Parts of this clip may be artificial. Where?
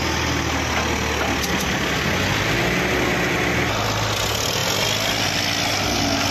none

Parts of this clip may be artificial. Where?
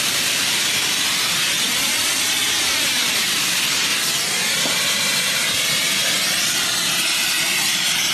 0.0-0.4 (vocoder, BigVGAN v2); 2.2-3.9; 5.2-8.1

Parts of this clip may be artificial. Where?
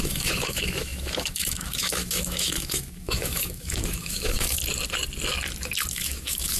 0.0-4.6 (autoencoder, DAC-VAE); 5.9-6.6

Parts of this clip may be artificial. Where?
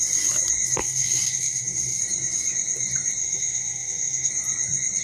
0.8-2.0 (codec, SNAC); 3.2-4.3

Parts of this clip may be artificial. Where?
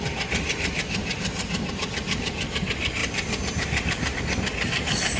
1.0-1.7 (vocoder, BigVGAN v2); 3.0-4.2